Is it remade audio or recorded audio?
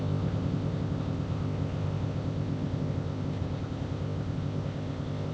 remade